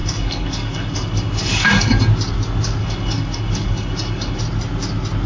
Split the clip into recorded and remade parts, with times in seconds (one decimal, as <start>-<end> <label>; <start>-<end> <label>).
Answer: 0.0-2.0 remade; 2.0-2.8 recorded; 2.8-4.4 remade; 4.4-5.3 recorded